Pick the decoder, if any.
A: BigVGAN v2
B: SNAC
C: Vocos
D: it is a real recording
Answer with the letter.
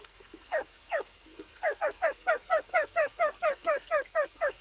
B